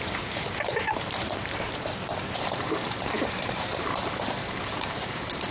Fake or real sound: fake